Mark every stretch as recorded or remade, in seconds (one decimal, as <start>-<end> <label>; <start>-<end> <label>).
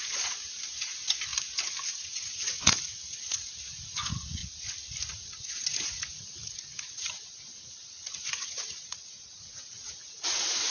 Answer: 0.0-1.3 remade; 1.3-1.9 recorded; 1.9-4.4 remade; 4.4-5.1 recorded; 5.1-10.7 remade